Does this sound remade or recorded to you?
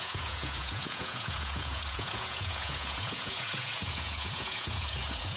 remade